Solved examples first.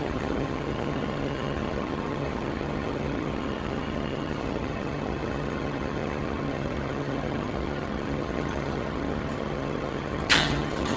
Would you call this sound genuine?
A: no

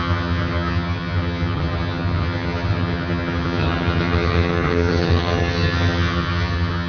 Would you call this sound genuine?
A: no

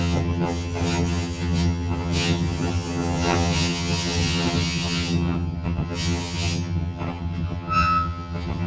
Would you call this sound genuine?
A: no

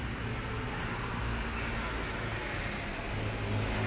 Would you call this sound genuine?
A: yes